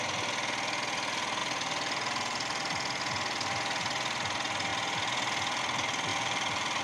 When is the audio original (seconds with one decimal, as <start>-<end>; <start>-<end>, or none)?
0.0-1.4; 3.0-4.7; 5.6-6.1